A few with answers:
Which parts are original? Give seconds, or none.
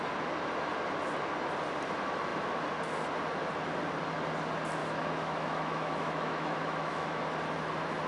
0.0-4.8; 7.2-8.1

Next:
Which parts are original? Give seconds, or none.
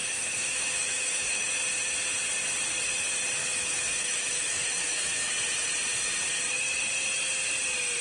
1.6-3.4; 5.3-8.0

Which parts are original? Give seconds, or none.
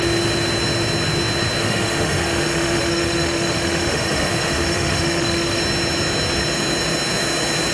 0.0-1.6; 5.6-7.7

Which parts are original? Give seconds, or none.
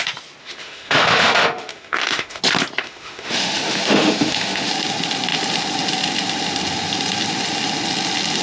0.0-0.4; 2.4-2.8; 4.7-8.4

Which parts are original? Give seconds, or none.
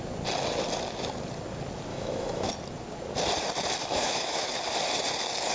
0.0-1.9; 2.5-3.8; 4.6-5.5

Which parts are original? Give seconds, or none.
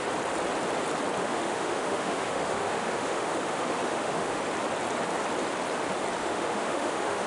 0.0-1.2; 4.4-6.2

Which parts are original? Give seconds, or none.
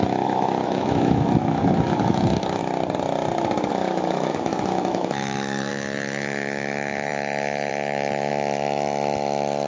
2.6-3.7; 8.3-9.7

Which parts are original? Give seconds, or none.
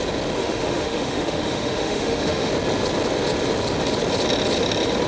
0.0-0.4; 2.5-5.1